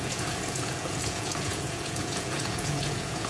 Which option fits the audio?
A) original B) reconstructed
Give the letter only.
B